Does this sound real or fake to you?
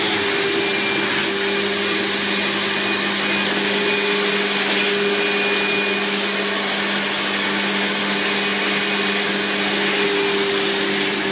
real